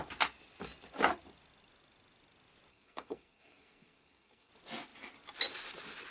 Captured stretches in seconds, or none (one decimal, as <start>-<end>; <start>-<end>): 0.0-2.7; 4.5-6.1

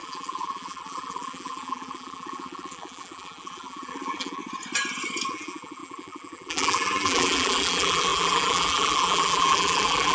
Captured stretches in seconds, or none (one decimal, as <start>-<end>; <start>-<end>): 4.4-5.3

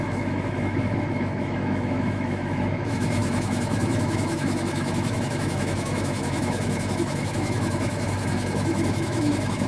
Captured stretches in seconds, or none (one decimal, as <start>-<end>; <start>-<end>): none

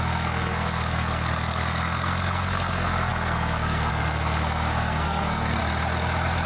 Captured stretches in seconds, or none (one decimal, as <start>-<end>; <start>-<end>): 5.6-6.5

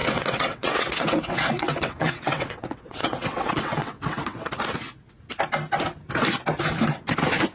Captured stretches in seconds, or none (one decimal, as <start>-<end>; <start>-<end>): 4.5-7.5

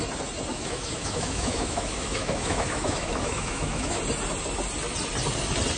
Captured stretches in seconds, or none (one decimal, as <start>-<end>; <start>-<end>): 0.0-0.5; 4.0-5.8

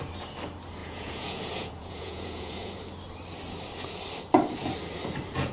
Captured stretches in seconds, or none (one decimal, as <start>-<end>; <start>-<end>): 0.0-0.8; 2.7-5.5

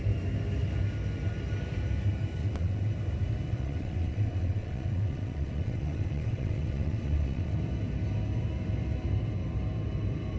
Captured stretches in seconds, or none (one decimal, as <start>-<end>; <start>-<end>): 0.0-2.4; 2.9-3.5; 7.6-10.4